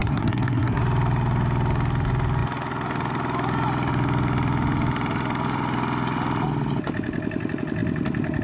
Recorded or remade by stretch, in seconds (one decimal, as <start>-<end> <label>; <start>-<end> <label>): 0.0-0.8 remade; 0.8-8.4 recorded